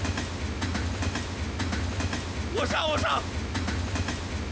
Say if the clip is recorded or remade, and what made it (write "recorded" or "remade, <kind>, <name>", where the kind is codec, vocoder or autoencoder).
recorded